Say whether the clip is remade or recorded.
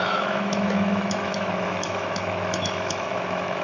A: remade